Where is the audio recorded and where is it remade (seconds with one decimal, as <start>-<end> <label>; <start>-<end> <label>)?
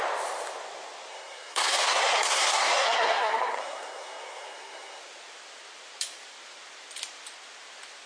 0.0-1.1 recorded; 1.1-5.0 remade; 5.0-8.1 recorded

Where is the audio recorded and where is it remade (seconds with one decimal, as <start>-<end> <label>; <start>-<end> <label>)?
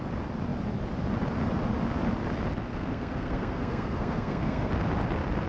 0.0-2.7 recorded; 2.7-4.7 remade; 4.7-5.5 recorded